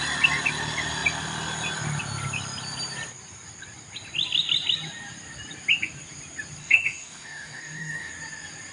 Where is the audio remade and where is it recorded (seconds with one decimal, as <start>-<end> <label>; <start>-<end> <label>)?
0.0-6.6 recorded; 6.6-8.1 remade; 8.1-8.7 recorded